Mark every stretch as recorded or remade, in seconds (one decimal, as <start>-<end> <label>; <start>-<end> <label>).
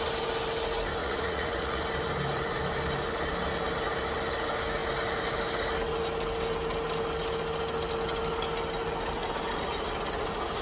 0.0-1.0 recorded; 1.0-1.8 remade; 1.8-10.6 recorded